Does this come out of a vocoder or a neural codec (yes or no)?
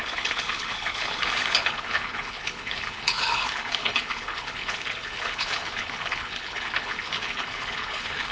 yes